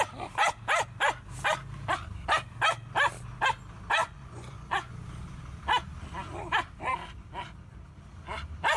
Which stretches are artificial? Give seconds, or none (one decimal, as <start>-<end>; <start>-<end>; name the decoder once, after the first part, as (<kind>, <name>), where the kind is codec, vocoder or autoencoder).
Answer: 4.0-4.9 (vocoder, Vocos)

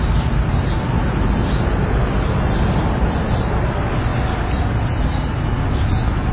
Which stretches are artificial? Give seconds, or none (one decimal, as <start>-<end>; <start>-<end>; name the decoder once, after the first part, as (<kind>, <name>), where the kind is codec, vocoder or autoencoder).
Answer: none

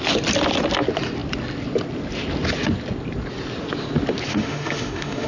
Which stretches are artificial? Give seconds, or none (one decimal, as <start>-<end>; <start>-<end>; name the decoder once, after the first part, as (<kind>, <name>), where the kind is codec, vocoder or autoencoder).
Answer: 4.3-5.3 (autoencoder, DAC-VAE)

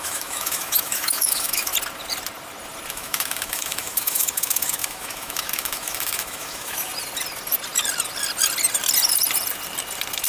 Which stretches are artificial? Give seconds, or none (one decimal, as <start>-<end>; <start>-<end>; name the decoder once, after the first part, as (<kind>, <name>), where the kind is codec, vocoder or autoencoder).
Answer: 0.0-1.7 (autoencoder, DAC-VAE); 2.9-6.9

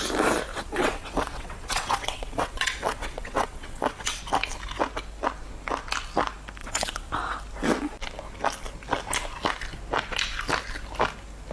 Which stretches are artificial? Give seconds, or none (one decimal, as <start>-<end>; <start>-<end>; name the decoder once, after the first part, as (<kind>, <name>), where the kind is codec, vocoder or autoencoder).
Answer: 0.5-4.2 (vocoder, WaveNeXt); 6.6-7.1

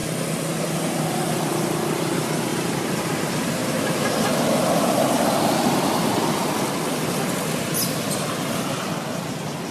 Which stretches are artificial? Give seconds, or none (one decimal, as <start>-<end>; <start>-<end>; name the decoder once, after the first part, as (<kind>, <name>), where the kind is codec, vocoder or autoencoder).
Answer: 2.5-3.1 (vocoder, BigVGAN v2)

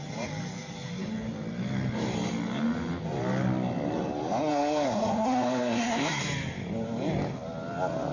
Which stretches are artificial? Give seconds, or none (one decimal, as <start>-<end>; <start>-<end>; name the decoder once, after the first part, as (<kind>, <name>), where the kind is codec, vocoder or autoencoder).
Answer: 4.5-6.2 (codec, SNAC)

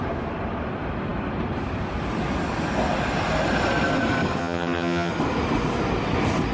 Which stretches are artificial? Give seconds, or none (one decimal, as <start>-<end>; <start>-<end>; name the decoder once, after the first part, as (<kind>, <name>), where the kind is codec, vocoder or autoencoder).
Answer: 4.4-5.1 (vocoder, HiFi-GAN)